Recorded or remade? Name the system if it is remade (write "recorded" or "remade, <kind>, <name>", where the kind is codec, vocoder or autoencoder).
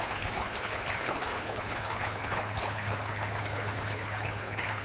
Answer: remade, codec, HILCodec